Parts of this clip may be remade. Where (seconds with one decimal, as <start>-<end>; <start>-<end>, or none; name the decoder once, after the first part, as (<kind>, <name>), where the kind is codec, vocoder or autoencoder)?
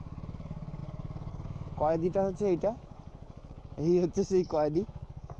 0.0-5.4 (codec, DAC)